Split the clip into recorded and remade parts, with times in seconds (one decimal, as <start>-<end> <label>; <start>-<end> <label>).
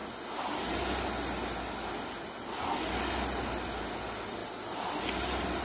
0.0-5.6 recorded